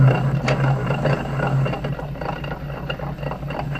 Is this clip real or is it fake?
real